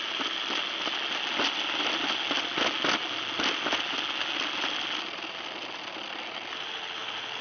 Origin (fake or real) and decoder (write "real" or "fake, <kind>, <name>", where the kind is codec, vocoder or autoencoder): real